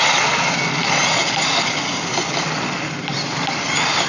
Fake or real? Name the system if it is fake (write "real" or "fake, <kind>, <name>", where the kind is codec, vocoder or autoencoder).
real